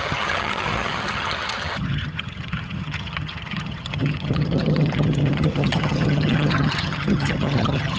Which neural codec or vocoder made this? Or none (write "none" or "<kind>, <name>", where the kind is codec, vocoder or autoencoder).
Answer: vocoder, HiFi-GAN